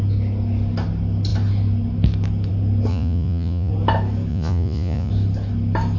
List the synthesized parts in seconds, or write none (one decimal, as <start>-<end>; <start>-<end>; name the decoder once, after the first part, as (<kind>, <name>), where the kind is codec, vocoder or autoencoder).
2.9-3.7 (vocoder, Vocos); 4.3-5.1